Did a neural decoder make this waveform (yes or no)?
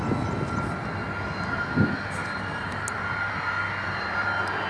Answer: no